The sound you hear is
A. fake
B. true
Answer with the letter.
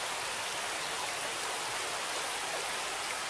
B